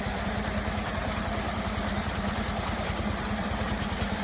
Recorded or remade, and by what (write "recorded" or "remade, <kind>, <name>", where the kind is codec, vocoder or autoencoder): remade, vocoder, BigVGAN v2